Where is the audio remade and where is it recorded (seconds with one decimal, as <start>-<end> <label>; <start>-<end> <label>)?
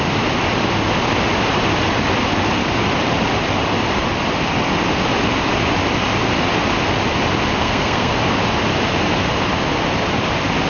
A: 0.0-7.6 recorded; 7.6-8.1 remade; 8.1-10.7 recorded